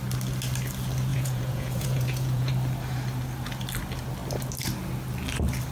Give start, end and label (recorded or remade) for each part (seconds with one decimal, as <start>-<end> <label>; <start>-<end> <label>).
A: 0.0-1.1 recorded; 1.1-2.5 remade; 2.5-5.7 recorded